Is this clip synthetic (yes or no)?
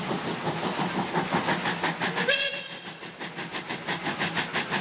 no